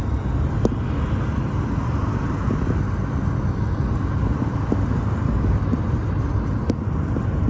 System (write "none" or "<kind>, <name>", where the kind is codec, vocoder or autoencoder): none